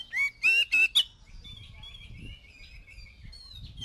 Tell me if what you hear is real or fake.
real